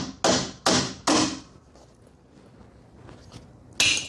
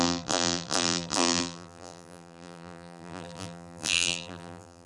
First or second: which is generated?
second